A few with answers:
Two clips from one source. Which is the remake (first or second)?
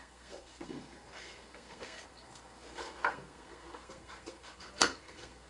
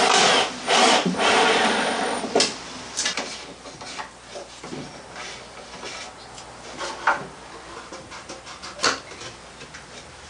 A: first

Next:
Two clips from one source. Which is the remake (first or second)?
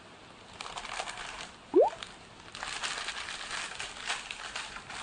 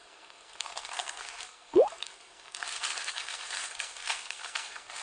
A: second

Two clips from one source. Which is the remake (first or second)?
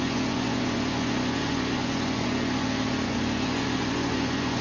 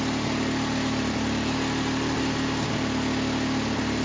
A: first